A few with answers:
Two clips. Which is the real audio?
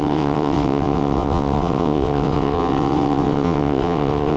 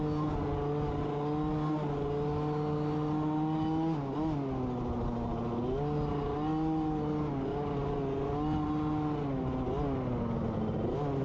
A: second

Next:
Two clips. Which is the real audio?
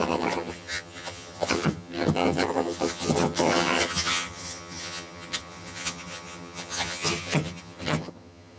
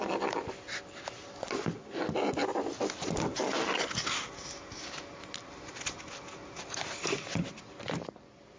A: second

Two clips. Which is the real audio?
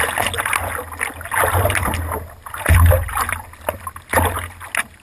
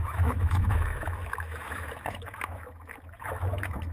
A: first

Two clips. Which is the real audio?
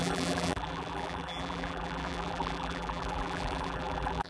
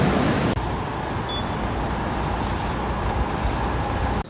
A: second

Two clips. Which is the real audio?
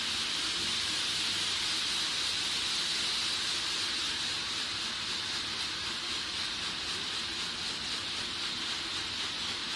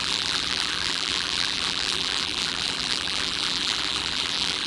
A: first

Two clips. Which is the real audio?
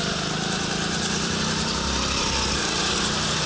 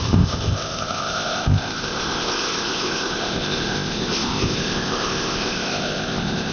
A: first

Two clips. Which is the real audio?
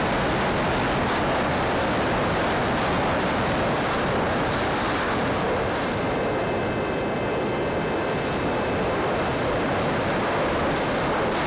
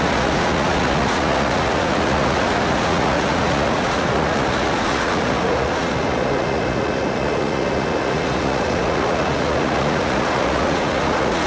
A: first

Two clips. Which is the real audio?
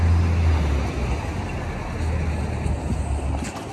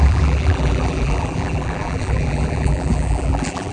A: first